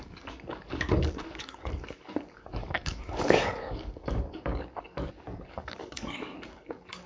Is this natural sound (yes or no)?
no